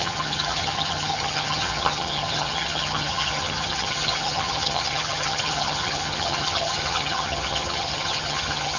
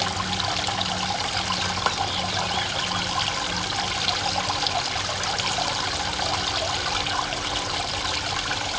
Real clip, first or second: second